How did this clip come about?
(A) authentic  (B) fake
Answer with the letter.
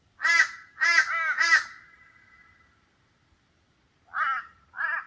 A